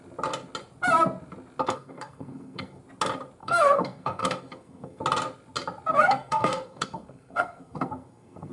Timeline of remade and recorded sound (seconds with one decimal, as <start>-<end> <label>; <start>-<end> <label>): 0.0-1.6 recorded; 1.6-2.8 remade; 2.8-3.4 recorded; 3.4-5.0 remade; 5.0-5.9 recorded; 5.9-8.5 remade